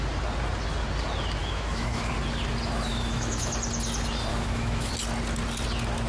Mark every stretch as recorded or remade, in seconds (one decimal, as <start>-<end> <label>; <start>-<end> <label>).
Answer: 0.0-1.4 recorded; 1.4-2.1 remade; 2.1-2.9 recorded; 2.9-3.5 remade; 3.5-4.3 recorded; 4.3-4.9 remade; 4.9-6.1 recorded